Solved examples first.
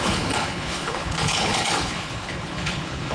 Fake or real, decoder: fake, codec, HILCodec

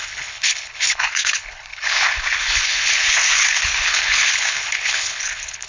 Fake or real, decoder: fake, codec, HILCodec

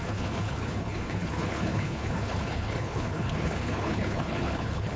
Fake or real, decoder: fake, codec, HILCodec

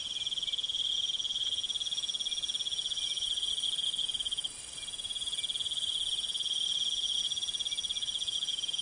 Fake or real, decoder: real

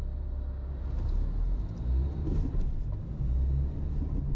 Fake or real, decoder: real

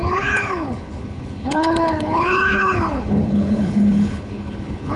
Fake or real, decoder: fake, codec, HILCodec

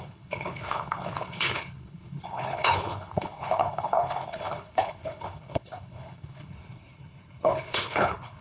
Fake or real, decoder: fake, codec, HILCodec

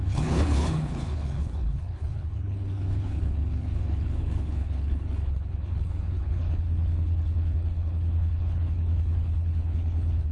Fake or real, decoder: fake, codec, HILCodec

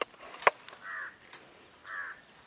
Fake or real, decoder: real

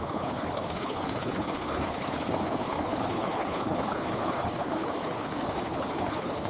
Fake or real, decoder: fake, codec, HILCodec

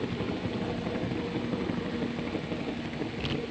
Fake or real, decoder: real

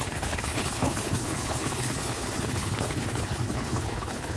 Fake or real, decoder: fake, codec, HILCodec